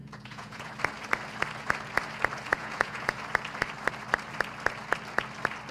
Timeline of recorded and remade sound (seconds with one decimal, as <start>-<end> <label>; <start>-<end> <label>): 0.0-0.7 remade; 0.7-2.5 recorded; 2.5-3.2 remade; 3.2-5.7 recorded